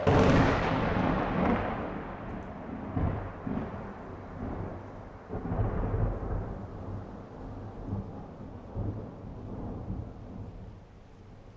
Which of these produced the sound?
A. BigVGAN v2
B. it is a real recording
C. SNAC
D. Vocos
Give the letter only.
B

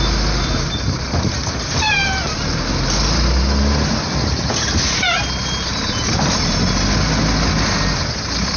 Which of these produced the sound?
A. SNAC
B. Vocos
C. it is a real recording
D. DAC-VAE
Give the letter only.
C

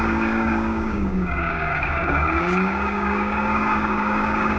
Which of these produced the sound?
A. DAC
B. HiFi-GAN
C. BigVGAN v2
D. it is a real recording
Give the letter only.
A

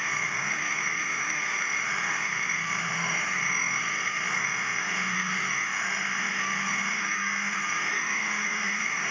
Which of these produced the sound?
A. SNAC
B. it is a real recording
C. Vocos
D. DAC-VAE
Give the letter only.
D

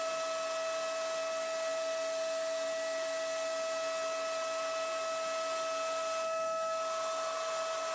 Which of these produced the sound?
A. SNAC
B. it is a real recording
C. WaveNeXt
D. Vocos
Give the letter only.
B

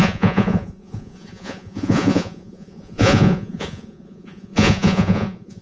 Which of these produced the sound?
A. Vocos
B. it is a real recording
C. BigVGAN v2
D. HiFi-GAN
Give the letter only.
A